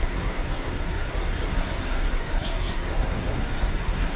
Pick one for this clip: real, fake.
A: fake